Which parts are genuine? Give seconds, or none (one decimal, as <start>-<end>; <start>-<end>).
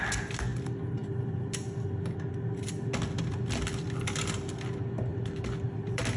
0.0-5.1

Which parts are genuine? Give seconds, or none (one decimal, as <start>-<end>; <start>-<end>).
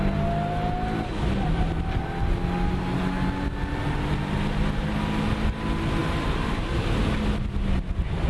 0.0-6.0; 7.0-8.3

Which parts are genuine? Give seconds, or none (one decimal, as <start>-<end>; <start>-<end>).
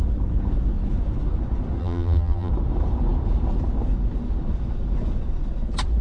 0.0-1.8; 2.5-6.0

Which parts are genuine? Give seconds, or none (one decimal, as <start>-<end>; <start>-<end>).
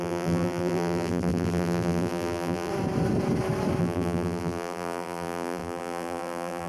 2.7-3.8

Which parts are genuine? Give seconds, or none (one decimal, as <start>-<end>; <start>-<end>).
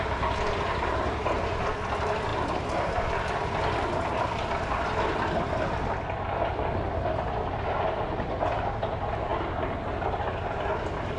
0.0-11.2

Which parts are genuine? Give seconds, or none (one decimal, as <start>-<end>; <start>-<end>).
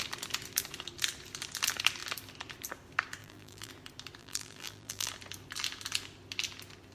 0.0-3.2; 3.7-4.2; 5.1-6.9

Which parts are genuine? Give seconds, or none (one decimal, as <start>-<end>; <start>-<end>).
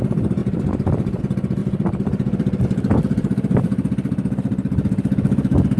3.7-5.8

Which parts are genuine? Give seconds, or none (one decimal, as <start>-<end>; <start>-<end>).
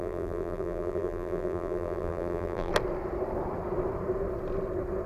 2.7-5.1